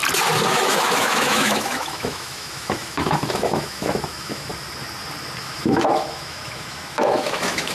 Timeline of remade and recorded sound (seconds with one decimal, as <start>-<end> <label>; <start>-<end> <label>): 0.0-0.5 recorded; 0.5-4.5 remade; 4.5-5.4 recorded; 5.4-7.7 remade